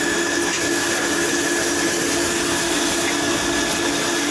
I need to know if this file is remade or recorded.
recorded